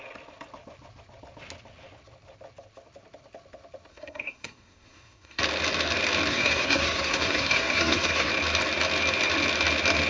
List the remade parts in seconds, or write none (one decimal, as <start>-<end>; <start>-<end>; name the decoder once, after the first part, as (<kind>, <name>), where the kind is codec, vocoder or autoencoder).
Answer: 3.9-5.4 (codec, SNAC); 6.3-8.3

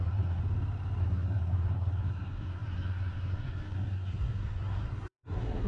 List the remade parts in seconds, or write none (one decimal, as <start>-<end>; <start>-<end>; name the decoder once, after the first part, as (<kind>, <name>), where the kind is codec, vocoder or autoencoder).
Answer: 0.0-0.4 (codec, SNAC); 1.0-5.7

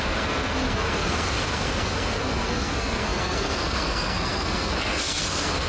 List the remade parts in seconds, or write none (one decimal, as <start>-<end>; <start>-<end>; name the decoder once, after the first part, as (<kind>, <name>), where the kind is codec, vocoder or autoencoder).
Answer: 0.0-5.7 (codec, SNAC)

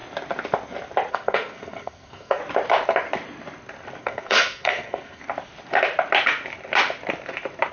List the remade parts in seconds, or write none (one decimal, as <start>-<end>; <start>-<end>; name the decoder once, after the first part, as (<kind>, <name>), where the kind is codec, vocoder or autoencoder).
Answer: 1.1-2.4 (codec, SNAC); 4.0-5.2

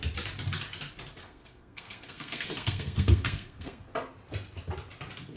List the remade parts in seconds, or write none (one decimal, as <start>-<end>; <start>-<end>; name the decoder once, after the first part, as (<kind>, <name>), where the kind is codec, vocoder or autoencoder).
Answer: 1.2-3.9 (codec, SNAC)

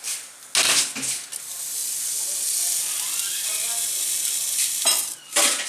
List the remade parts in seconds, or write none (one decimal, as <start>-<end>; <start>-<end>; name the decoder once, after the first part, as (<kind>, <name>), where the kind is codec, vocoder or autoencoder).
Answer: none

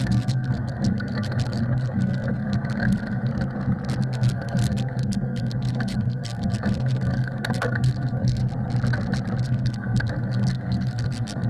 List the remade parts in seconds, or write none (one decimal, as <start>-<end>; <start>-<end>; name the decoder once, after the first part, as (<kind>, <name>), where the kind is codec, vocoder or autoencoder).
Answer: 0.0-3.3 (codec, SNAC); 4.0-8.4; 9.4-11.5

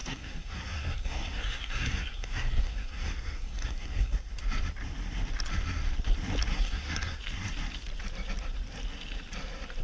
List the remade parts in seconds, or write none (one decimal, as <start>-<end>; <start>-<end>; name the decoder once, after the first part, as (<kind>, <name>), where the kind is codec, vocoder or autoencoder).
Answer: 0.0-4.3 (codec, SNAC); 6.5-7.2